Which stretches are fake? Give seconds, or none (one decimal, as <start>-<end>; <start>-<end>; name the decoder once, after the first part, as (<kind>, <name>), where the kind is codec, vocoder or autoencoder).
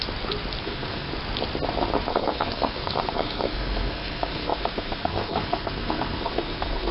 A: 0.6-1.1 (codec, SNAC); 2.1-6.9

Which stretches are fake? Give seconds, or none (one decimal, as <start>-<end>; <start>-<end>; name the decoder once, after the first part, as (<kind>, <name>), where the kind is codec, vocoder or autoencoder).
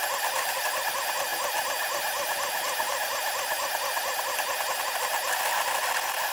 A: none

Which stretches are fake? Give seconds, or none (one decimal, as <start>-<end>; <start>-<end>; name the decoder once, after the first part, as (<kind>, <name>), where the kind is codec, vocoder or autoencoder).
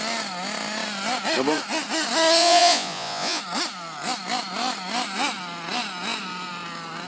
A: 2.4-3.4 (vocoder, Vocos)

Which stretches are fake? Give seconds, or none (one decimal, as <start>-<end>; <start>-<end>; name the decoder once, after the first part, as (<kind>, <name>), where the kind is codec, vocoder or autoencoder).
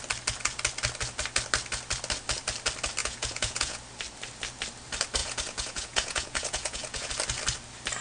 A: 3.0-3.8 (vocoder, Vocos); 5.2-7.1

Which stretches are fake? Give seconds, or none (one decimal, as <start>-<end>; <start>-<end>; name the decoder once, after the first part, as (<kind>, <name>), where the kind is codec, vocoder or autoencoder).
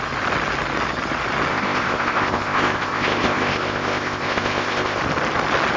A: 1.5-5.0 (codec, ZipCodec)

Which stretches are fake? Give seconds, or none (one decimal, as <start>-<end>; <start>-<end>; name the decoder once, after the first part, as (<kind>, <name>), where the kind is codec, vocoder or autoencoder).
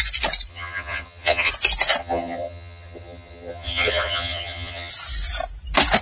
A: 0.5-1.5 (vocoder, HiFi-GAN); 2.0-4.9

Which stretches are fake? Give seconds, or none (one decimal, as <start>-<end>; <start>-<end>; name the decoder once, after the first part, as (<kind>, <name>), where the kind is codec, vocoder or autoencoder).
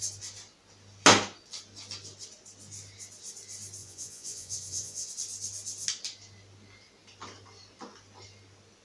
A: 3.8-5.1 (vocoder, Vocos)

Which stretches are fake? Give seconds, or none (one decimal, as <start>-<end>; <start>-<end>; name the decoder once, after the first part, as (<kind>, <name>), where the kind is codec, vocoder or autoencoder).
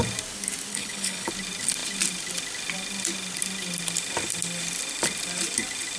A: 0.7-1.3 (codec, HILCodec)